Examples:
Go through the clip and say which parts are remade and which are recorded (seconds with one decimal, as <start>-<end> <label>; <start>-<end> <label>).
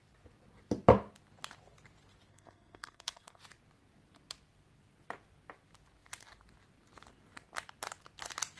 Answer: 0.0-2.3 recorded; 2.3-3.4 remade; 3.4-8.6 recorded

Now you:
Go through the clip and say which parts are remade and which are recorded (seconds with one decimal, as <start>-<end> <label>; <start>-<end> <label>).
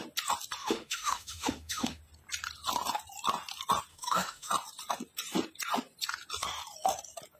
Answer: 0.0-0.6 recorded; 0.6-2.0 remade; 2.0-3.9 recorded; 3.9-4.5 remade; 4.5-7.4 recorded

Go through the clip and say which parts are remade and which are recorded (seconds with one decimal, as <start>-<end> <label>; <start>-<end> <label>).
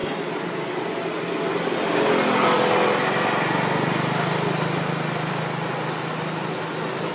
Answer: 0.0-7.1 recorded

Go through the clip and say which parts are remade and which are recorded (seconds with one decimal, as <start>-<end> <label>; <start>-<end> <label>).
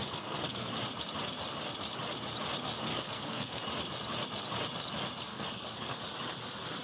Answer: 0.0-0.7 remade; 0.7-2.9 recorded; 2.9-3.6 remade; 3.6-5.3 recorded; 5.3-6.0 remade; 6.0-6.8 recorded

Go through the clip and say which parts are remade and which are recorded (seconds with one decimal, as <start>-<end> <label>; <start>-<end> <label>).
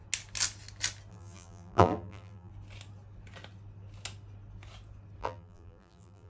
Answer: 0.0-1.1 recorded; 1.1-2.5 remade; 2.5-5.2 recorded; 5.2-6.3 remade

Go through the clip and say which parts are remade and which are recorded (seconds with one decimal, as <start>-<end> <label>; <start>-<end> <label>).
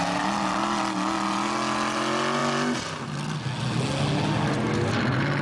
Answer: 0.0-5.4 recorded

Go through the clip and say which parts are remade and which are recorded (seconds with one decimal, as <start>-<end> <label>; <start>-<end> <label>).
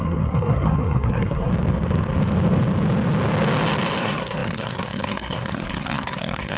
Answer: 0.0-1.5 remade; 1.5-4.0 recorded; 4.0-6.6 remade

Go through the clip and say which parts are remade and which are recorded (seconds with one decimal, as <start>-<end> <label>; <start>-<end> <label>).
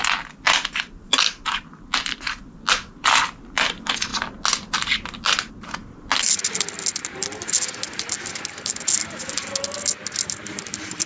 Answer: 0.0-11.1 recorded